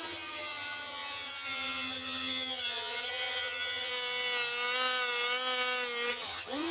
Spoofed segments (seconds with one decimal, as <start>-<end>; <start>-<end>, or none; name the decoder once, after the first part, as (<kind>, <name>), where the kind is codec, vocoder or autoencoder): 0.0-3.9 (vocoder, HiFi-GAN); 6.1-6.7